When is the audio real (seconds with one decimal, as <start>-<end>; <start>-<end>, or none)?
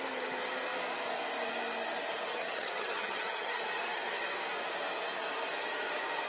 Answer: 0.0-2.3; 3.6-6.3